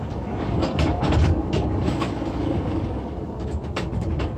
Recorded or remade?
remade